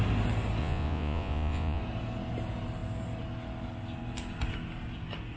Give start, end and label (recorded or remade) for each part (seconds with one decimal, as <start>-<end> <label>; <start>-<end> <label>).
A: 0.0-0.6 recorded; 0.6-1.8 remade; 1.8-5.4 recorded